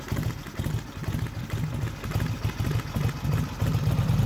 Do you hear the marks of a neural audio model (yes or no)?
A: no